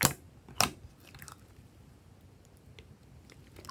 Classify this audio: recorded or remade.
recorded